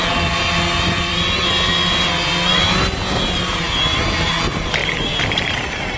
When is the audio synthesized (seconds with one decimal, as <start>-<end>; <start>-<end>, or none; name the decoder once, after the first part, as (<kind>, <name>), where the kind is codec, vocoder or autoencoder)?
none

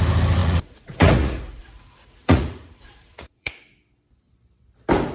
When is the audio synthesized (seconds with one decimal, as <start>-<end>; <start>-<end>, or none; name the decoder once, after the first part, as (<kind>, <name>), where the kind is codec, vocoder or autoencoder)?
0.4-3.5 (vocoder, Vocos)

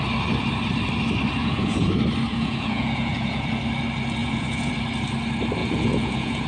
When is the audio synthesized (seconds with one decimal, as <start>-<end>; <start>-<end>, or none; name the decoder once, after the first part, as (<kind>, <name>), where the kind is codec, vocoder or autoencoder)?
1.4-1.9 (vocoder, Vocos); 2.3-3.6; 4.2-4.7; 5.6-6.5

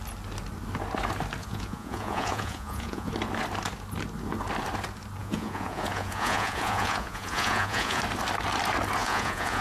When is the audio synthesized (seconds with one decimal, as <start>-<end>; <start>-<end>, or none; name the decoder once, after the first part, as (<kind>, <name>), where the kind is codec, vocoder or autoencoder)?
1.4-3.1 (vocoder, Vocos); 5.2-8.0; 9.0-9.6